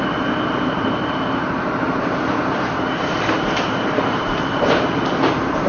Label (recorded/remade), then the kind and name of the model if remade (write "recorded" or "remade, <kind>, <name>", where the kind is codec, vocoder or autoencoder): remade, vocoder, BigVGAN v2